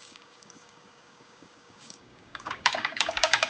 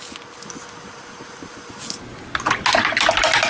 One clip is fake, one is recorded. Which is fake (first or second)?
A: first